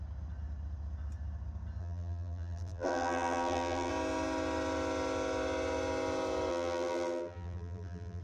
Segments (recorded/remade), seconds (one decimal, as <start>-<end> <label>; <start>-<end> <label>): 0.0-1.8 recorded; 1.8-3.9 remade; 3.9-6.5 recorded; 6.5-8.2 remade